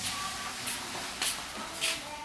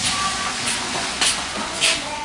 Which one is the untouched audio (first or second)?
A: first